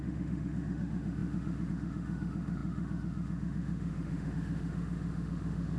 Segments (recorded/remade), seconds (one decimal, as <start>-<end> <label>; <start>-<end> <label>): 0.0-5.8 remade

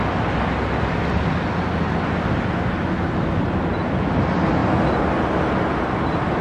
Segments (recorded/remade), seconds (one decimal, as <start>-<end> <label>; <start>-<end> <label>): 0.0-6.4 recorded

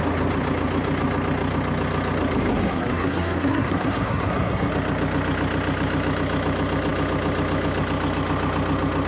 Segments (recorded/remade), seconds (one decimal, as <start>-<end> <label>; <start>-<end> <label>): 0.0-2.5 recorded; 2.5-4.7 remade; 4.7-9.1 recorded

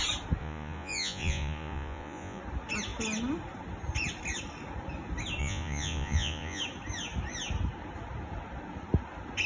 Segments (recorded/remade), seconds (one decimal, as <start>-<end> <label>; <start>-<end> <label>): 0.0-0.4 recorded; 0.4-2.4 remade; 2.4-5.4 recorded; 5.4-6.6 remade; 6.6-9.5 recorded